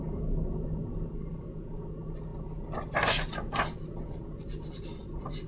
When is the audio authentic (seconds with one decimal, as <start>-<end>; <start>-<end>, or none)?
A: 0.0-5.5